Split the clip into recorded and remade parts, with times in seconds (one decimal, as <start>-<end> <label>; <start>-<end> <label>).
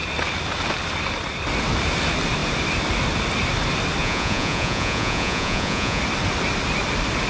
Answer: 0.0-4.0 recorded; 4.0-6.0 remade; 6.0-7.3 recorded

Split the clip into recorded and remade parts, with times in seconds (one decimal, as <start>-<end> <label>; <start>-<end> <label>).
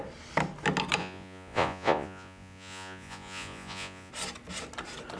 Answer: 0.0-1.0 recorded; 1.0-4.1 remade; 4.1-5.2 recorded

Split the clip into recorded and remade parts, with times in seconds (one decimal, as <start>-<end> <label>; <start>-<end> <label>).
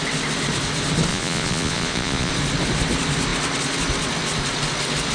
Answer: 0.0-1.1 recorded; 1.1-2.3 remade; 2.3-5.1 recorded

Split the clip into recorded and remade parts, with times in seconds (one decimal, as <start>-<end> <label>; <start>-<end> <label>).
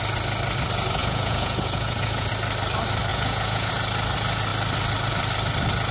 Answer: 0.0-1.0 recorded; 1.0-2.3 remade; 2.3-3.1 recorded; 3.1-3.7 remade; 3.7-5.9 recorded